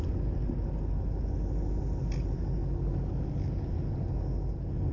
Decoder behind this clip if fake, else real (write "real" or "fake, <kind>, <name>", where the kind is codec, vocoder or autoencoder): real